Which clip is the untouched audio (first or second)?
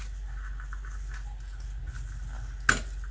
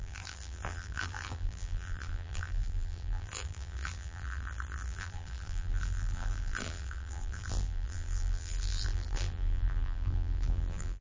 first